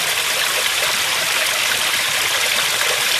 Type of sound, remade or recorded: recorded